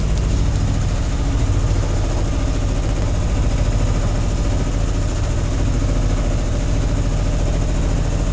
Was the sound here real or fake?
real